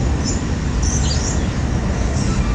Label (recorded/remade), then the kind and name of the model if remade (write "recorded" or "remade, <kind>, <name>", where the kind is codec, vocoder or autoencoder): recorded